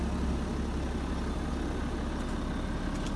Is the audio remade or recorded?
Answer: recorded